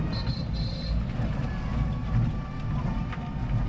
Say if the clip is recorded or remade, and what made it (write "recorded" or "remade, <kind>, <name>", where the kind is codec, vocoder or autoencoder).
recorded